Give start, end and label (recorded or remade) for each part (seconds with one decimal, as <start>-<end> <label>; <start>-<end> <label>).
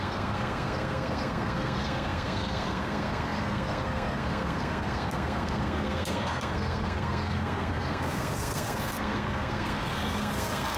0.0-10.8 remade